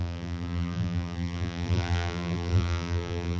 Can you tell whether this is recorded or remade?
remade